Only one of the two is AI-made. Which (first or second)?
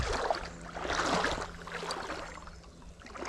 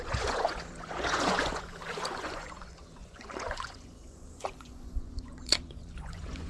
second